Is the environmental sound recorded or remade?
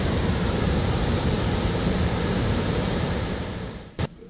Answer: remade